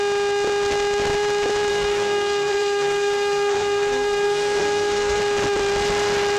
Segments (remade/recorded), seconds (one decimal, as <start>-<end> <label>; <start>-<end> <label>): 0.0-1.7 recorded; 1.7-5.2 remade; 5.2-6.4 recorded